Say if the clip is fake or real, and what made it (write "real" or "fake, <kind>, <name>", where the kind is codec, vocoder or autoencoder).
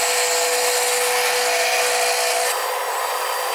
real